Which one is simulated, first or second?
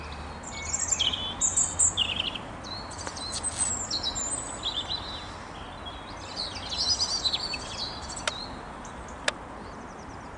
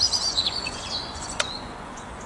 second